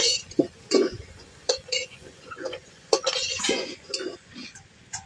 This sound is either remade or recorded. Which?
remade